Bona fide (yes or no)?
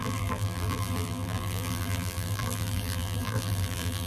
no